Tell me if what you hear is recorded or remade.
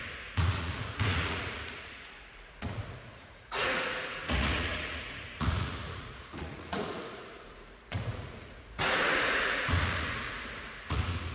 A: remade